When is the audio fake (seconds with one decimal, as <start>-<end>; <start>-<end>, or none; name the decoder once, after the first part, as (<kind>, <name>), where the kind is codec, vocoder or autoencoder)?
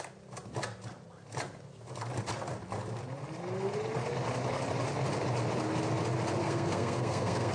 6.4-7.5 (codec, SNAC)